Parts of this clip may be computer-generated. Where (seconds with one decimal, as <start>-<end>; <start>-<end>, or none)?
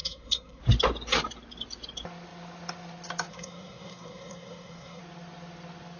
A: 0.0-0.6; 3.3-5.0